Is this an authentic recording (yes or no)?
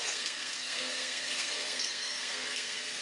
no